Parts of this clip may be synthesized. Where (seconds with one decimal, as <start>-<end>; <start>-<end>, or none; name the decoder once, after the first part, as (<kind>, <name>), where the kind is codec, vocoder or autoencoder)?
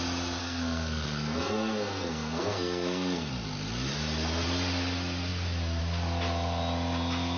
0.4-3.3 (codec, SNAC)